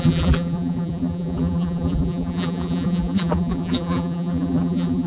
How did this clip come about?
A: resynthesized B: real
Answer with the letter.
A